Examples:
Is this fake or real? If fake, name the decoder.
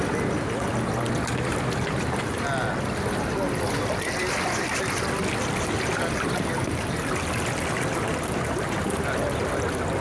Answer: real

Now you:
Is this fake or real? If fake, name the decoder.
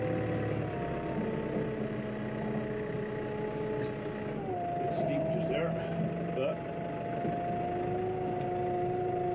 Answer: real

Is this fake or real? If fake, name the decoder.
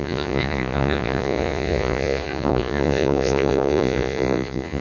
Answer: fake, vocoder, Vocos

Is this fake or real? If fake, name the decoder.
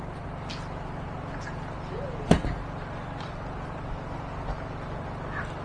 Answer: real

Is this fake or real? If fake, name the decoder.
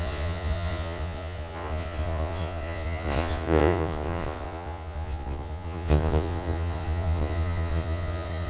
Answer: fake, vocoder, Vocos